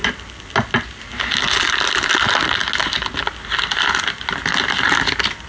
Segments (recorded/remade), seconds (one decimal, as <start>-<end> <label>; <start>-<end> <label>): 0.0-5.5 recorded